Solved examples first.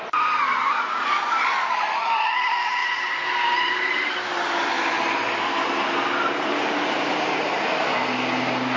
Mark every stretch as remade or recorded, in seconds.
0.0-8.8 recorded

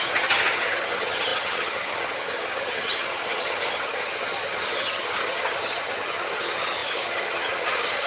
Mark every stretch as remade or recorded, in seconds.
0.0-8.1 remade

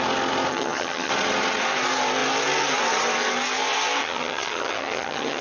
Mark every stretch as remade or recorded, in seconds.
0.0-0.5 recorded; 0.5-1.1 remade; 1.1-4.0 recorded; 4.0-5.4 remade

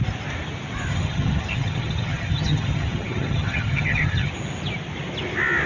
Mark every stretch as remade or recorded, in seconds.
0.0-0.9 recorded; 0.9-4.3 remade; 4.3-5.7 recorded

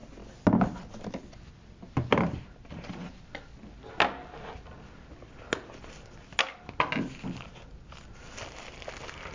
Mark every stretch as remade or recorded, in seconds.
0.0-9.3 recorded

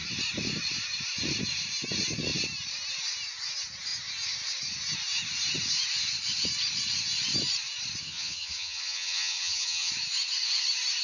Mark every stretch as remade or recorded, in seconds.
0.0-8.0 recorded; 8.0-9.9 remade; 9.9-11.0 recorded